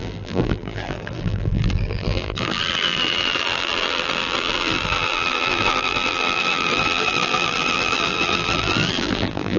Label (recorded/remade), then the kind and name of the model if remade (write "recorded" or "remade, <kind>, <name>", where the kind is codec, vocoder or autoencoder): remade, vocoder, BigVGAN v2